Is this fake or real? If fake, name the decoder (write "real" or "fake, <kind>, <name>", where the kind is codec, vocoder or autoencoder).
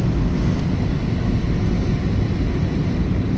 real